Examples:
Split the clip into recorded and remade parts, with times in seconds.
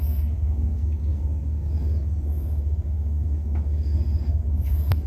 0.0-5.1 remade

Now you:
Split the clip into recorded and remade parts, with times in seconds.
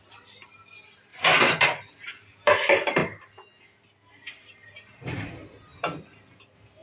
0.0-1.1 remade; 1.1-1.9 recorded; 1.9-5.7 remade; 5.7-6.8 recorded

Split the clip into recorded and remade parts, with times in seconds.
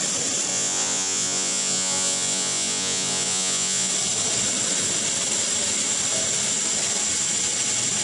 0.0-0.5 recorded; 0.5-3.9 remade; 3.9-8.0 recorded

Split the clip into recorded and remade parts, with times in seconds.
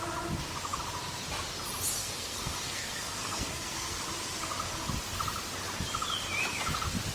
0.0-2.0 recorded; 2.0-4.0 remade; 4.0-7.1 recorded